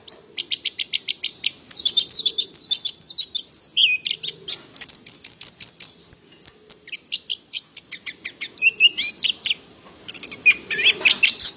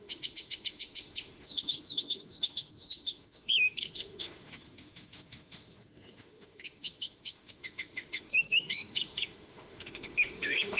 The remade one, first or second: second